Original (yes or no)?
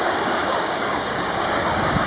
no